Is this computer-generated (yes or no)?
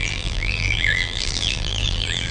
yes